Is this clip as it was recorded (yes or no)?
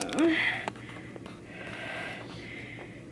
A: yes